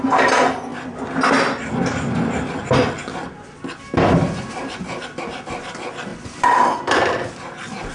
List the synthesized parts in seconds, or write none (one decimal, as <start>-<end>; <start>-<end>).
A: 6.1-6.7

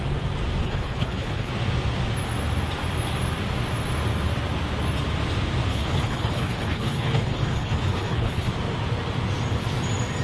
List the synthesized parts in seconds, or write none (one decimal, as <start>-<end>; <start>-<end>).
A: 0.6-1.5; 5.7-8.5

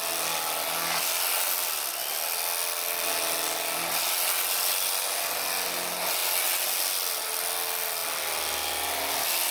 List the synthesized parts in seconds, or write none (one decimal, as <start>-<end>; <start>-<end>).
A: none